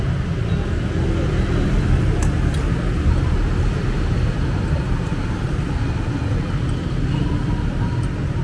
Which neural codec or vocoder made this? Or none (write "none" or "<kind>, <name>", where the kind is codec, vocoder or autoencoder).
none